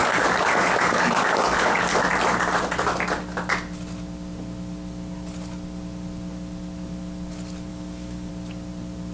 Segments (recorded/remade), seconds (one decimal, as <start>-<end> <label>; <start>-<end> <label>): 0.0-1.8 remade; 1.8-7.7 recorded; 7.7-8.3 remade; 8.3-9.1 recorded